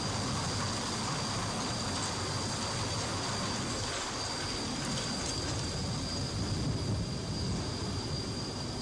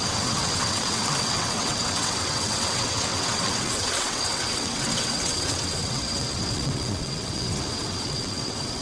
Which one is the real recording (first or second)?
first